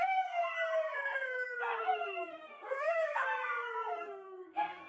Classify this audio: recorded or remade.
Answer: remade